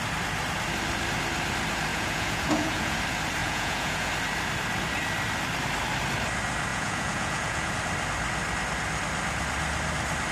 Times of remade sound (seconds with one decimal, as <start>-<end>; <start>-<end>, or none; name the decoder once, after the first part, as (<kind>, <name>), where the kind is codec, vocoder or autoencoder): 1.9-3.0 (vocoder, Vocos); 3.4-4.1; 6.7-7.7